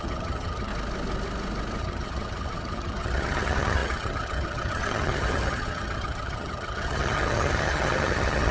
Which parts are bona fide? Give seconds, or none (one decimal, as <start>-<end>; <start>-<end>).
0.7-1.8